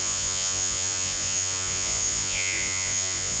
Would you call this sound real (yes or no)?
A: no